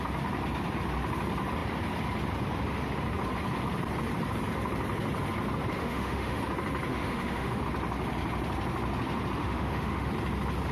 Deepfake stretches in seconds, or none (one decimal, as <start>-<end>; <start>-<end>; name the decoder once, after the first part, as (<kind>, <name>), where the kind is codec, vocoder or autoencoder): 5.8-6.4 (autoencoder, DAC-VAE); 6.9-7.6; 9.4-10.1